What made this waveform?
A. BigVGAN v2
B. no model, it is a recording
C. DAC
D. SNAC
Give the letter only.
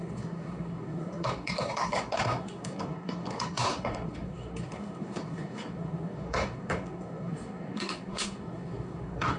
D